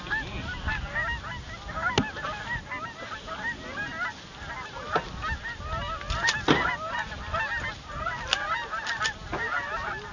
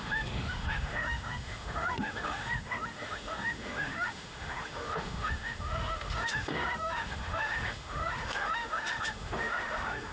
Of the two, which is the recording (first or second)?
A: first